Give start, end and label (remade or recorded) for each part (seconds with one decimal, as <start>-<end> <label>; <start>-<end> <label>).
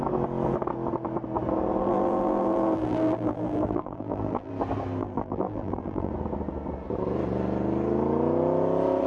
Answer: 0.0-1.8 recorded; 1.8-4.5 remade; 4.5-5.0 recorded; 5.0-6.1 remade; 6.1-9.1 recorded